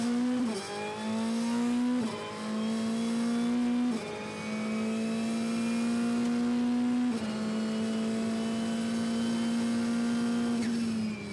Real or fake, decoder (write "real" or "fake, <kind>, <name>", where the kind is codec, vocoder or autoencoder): real